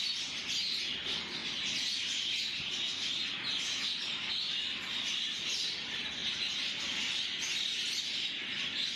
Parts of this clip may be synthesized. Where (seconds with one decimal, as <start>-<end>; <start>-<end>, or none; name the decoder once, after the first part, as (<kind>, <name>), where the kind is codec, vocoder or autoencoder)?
6.2-8.0 (vocoder, BigVGAN v2)